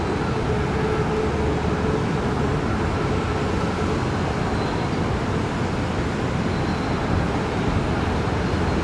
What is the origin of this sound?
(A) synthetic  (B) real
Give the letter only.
B